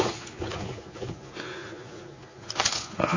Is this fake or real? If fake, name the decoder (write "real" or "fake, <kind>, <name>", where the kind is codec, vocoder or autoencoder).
fake, vocoder, Vocos